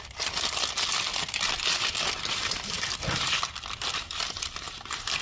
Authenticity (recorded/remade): remade